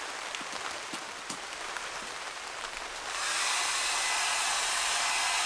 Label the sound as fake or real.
real